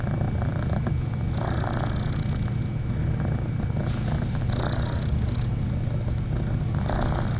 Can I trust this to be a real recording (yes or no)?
yes